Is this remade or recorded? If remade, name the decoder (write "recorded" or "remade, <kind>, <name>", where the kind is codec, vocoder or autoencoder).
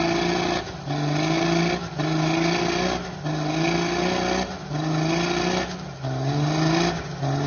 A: recorded